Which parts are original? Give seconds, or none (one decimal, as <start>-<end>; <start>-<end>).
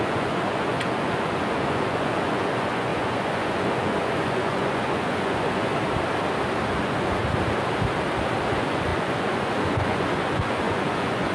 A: 5.7-6.7; 7.2-8.4